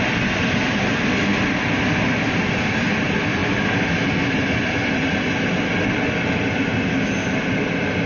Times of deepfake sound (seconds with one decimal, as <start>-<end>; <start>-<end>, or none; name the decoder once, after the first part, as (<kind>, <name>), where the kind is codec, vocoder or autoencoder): none